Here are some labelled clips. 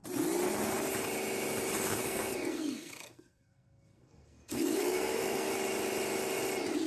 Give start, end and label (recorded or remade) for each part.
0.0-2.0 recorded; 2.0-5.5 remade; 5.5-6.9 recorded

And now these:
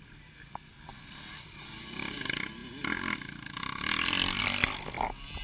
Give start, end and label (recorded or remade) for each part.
0.0-5.4 recorded

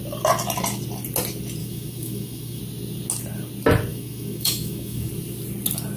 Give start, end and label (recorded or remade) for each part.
0.0-1.6 recorded; 1.6-2.6 remade; 2.6-3.9 recorded; 3.9-5.1 remade; 5.1-6.0 recorded

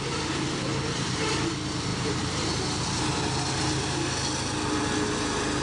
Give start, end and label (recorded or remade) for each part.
0.0-0.7 recorded; 0.7-1.3 remade; 1.3-1.9 recorded; 1.9-3.0 remade; 3.0-5.6 recorded

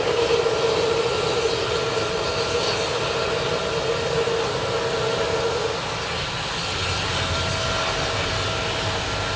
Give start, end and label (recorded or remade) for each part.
0.0-9.4 recorded

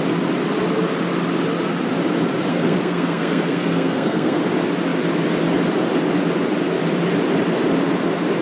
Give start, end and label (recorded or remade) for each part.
0.0-2.5 recorded; 2.5-4.4 remade; 4.4-8.4 recorded